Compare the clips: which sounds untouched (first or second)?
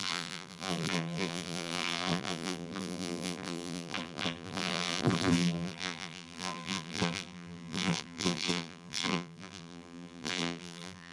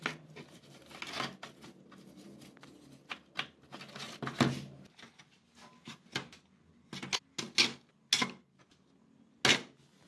second